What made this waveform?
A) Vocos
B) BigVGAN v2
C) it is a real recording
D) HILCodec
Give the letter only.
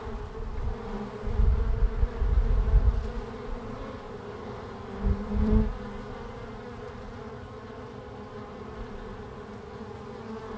C